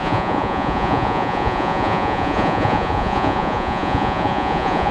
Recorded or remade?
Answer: remade